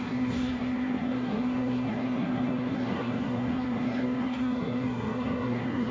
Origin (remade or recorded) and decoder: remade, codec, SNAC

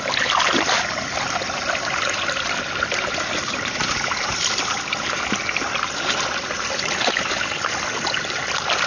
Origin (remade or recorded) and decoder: recorded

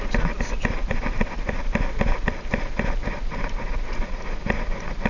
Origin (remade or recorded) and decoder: recorded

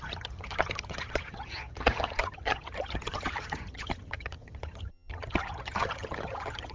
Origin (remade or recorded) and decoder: remade, vocoder, HiFi-GAN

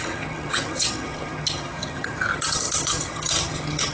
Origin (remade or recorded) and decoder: remade, vocoder, HiFi-GAN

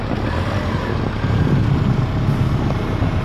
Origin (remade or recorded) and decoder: recorded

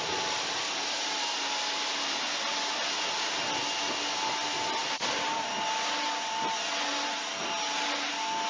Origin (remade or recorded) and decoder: recorded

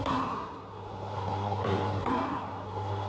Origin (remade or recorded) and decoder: remade, codec, SNAC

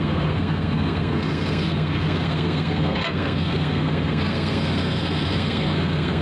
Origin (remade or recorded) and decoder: remade, codec, SNAC